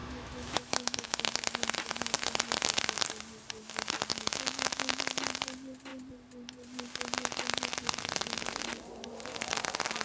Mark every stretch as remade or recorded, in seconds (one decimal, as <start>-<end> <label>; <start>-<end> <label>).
0.0-1.2 remade; 1.2-4.1 recorded; 4.1-5.0 remade; 5.0-10.0 recorded